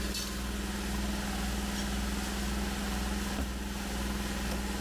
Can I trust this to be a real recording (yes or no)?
yes